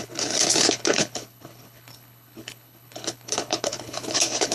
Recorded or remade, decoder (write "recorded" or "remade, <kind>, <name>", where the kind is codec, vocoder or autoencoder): remade, codec, HILCodec